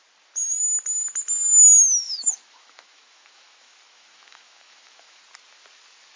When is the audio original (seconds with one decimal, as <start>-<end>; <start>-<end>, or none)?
0.0-2.0; 5.2-6.2